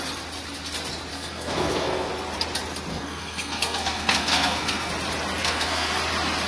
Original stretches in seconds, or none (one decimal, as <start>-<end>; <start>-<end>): 0.0-1.1; 2.1-2.9; 4.9-5.4; 5.9-6.5